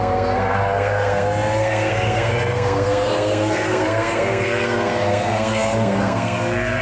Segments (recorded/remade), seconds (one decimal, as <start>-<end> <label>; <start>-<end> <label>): 0.0-6.8 remade